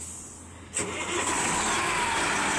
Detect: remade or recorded recorded